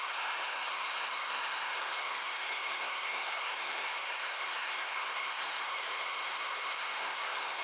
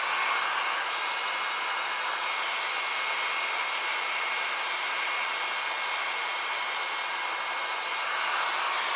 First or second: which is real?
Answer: second